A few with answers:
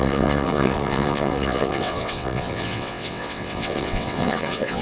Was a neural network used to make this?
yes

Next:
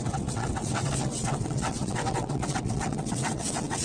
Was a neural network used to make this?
yes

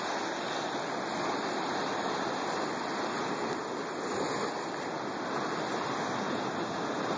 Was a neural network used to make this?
no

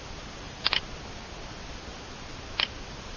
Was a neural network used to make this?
no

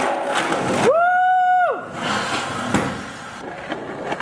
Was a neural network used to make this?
no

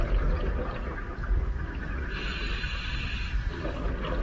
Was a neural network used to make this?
no